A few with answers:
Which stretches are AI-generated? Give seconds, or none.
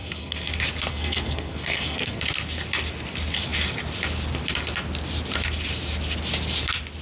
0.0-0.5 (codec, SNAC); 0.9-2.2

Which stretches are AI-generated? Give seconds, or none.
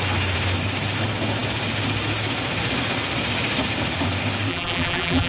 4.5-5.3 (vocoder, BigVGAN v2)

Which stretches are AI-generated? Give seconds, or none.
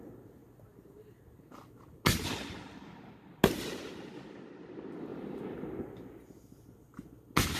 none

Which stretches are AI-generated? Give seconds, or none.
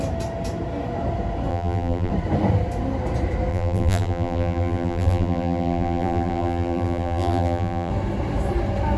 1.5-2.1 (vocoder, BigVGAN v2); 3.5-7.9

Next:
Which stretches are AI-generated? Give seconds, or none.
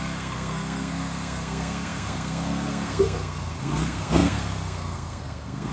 0.0-5.7 (codec, SNAC)